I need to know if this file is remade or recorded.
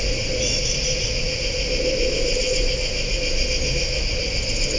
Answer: recorded